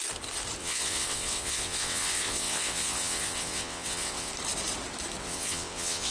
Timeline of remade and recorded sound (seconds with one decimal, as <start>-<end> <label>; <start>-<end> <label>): 0.0-0.6 recorded; 0.6-4.3 remade; 4.3-5.2 recorded; 5.2-6.1 remade